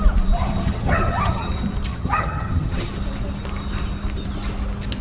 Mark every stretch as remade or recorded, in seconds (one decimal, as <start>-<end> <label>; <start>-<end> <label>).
0.0-0.4 recorded; 0.4-1.5 remade; 1.5-1.9 recorded; 1.9-2.9 remade; 2.9-5.0 recorded